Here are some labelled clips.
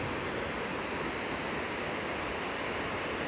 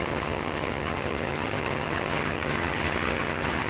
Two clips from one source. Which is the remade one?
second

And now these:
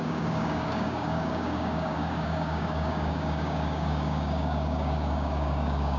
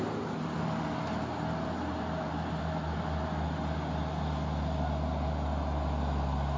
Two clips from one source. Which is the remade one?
first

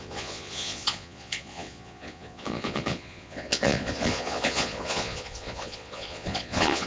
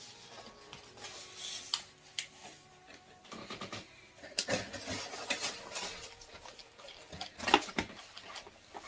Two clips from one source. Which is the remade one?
first